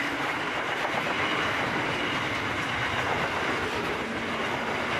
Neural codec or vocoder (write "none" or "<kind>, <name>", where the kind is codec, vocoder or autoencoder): none